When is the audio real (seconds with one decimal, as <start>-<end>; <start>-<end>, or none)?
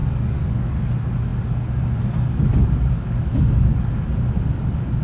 0.9-2.5; 3.9-5.0